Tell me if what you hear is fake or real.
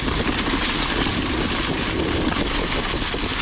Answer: real